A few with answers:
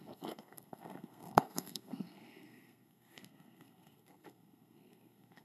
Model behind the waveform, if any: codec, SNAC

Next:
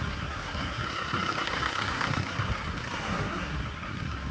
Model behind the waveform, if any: codec, SNAC